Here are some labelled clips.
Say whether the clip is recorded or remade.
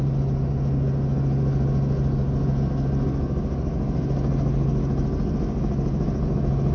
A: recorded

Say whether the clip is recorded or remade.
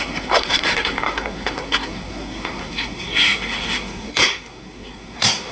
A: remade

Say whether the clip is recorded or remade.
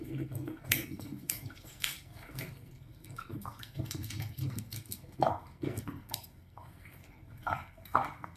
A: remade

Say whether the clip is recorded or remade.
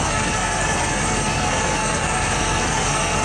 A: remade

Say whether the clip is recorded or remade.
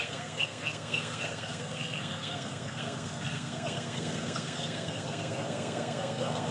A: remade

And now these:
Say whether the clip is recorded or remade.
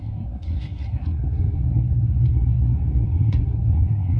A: remade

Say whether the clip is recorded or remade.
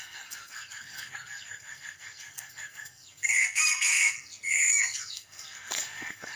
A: remade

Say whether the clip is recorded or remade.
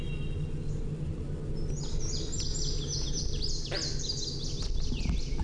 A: recorded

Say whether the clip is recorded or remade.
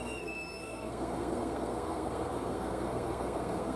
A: remade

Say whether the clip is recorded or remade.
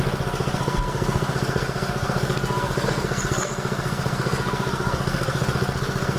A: remade